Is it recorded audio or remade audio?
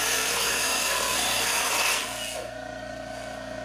remade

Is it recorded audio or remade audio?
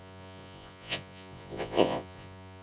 remade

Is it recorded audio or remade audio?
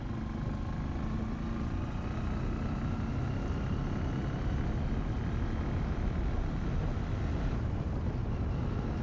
recorded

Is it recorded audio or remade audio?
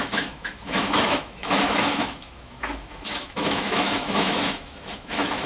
remade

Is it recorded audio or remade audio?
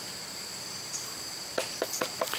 remade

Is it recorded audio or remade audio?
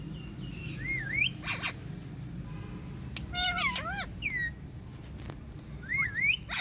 recorded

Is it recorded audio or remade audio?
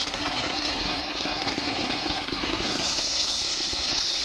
remade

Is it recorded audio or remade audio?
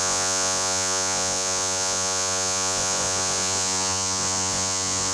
remade